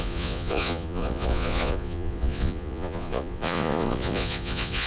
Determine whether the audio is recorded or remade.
remade